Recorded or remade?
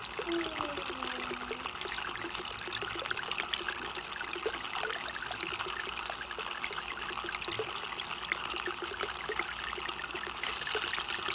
recorded